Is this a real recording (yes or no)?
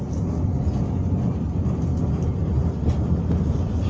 yes